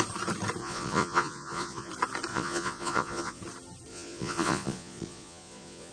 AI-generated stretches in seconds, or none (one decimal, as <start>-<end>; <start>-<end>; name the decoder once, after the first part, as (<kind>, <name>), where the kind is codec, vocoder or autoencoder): 0.6-1.9 (vocoder, Vocos); 2.3-3.4; 3.9-5.9